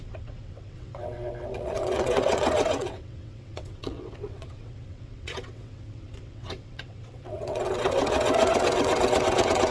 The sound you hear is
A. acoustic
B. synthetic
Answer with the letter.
B